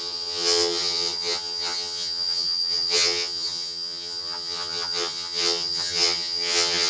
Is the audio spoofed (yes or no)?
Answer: yes